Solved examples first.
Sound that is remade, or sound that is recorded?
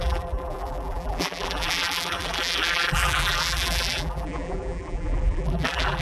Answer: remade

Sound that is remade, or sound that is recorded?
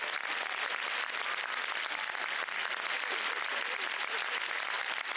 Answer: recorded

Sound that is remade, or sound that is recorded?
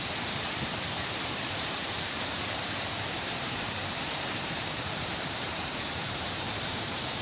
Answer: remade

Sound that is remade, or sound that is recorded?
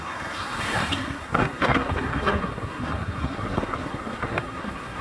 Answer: remade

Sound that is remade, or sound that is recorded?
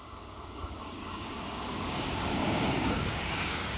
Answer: remade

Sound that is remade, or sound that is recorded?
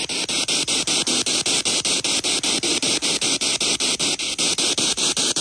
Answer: recorded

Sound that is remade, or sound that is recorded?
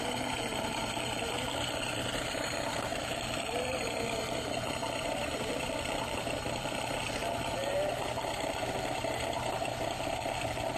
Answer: remade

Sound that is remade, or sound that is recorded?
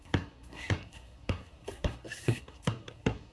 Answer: remade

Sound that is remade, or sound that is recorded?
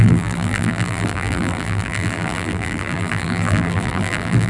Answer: remade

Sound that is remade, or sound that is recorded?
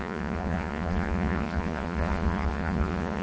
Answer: remade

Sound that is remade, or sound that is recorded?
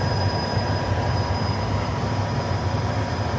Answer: remade